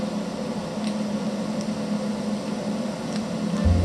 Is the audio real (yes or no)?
yes